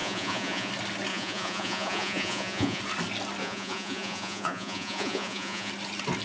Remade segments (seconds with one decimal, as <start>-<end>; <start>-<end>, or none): 0.0-0.7; 1.1-2.8; 3.4-5.7